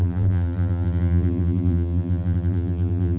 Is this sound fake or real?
fake